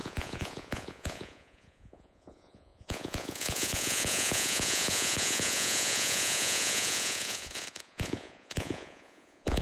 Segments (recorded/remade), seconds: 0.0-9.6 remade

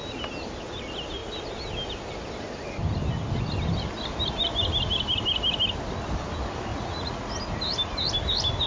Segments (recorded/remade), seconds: 0.0-6.7 recorded; 6.7-7.3 remade; 7.3-8.7 recorded

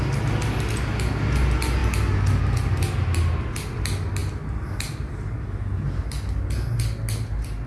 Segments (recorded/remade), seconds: 0.0-7.7 recorded